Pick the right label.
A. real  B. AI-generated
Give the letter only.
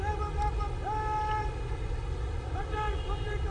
A